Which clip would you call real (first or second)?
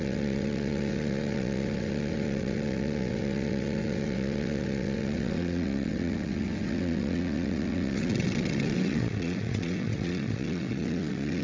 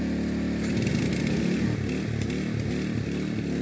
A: second